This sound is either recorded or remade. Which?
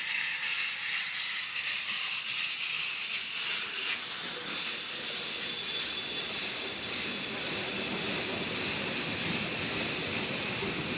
recorded